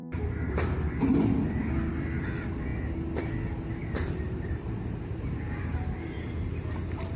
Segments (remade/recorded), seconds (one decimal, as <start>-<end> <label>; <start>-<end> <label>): 0.0-0.9 remade; 0.9-3.8 recorded; 3.8-5.7 remade; 5.7-7.2 recorded